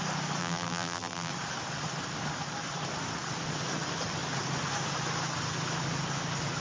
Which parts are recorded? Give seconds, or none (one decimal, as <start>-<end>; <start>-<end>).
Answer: 0.0-0.4; 1.3-6.6